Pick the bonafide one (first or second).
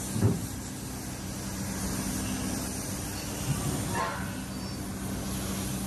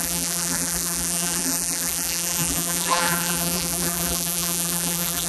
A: first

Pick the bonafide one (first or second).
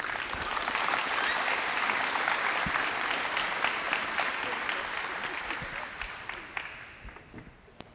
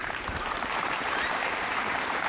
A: first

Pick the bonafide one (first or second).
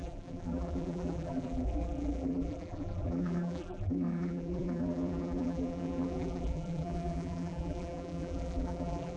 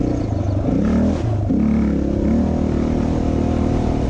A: second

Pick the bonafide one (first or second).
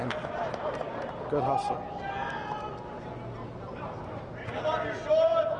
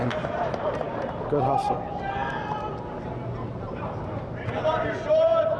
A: first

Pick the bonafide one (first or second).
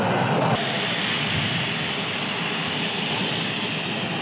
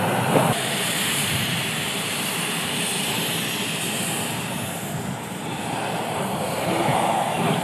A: first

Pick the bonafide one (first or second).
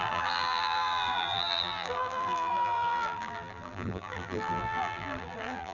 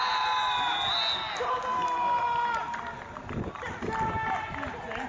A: second